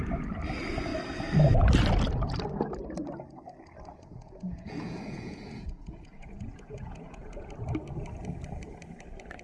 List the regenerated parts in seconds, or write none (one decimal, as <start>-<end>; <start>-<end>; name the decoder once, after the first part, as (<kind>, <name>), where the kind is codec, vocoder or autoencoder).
4.1-7.4 (vocoder, Vocos)